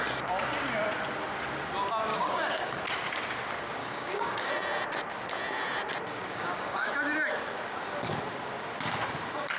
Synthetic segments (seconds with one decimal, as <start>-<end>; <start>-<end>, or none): 2.1-2.8; 3.8-4.5; 6.3-6.9

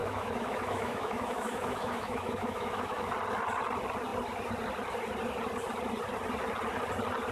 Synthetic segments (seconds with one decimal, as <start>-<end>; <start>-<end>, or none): 0.0-3.1

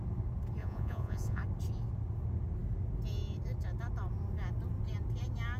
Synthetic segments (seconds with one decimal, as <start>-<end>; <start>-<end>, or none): 0.6-1.4

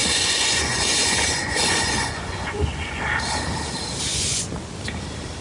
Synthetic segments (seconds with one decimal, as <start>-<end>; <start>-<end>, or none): 0.0-3.0; 4.1-4.6

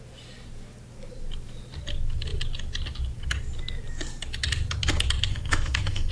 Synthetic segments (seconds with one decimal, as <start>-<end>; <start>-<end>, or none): 5.3-6.1